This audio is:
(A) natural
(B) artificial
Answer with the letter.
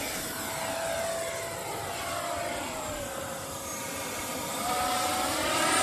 B